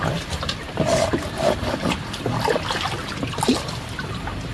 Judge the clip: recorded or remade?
recorded